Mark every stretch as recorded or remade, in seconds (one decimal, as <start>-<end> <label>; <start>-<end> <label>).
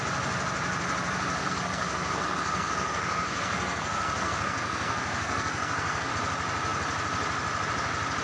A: 0.0-1.4 recorded; 1.4-6.1 remade; 6.1-8.2 recorded